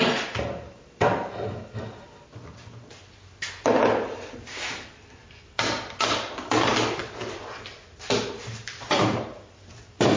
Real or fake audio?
real